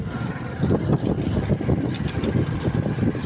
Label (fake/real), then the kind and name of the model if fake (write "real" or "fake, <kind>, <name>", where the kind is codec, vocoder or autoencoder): real